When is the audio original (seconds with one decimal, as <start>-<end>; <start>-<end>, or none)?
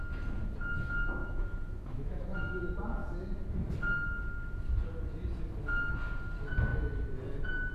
0.0-1.2; 2.6-7.7